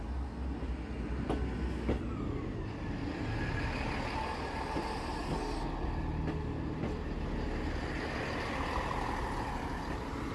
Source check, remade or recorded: recorded